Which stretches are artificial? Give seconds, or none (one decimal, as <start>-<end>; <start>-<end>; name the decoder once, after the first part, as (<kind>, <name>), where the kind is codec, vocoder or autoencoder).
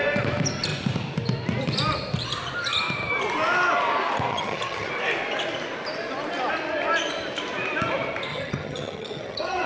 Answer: 4.3-4.9 (vocoder, HiFi-GAN); 8.3-9.7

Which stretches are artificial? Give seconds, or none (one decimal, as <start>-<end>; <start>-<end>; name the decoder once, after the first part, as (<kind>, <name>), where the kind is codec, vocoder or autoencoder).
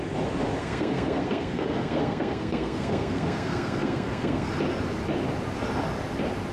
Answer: 0.6-4.5 (codec, SNAC)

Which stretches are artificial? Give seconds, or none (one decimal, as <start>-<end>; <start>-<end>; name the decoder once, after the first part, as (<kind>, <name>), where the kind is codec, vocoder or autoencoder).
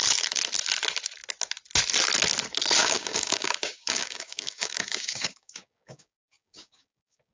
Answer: 2.8-7.3 (codec, DAC)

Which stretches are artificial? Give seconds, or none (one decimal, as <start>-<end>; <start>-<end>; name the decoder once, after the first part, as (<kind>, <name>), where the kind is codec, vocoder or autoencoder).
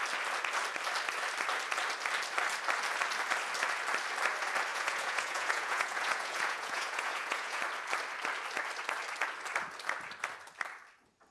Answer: 4.7-7.6 (vocoder, Vocos)